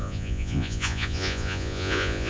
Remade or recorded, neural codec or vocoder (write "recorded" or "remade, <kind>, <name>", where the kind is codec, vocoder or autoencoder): remade, vocoder, Vocos